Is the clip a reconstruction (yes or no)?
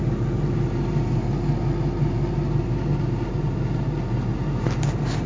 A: no